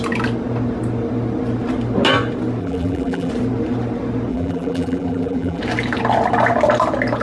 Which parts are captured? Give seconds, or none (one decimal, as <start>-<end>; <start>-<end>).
0.0-2.6; 3.3-4.3; 5.6-7.2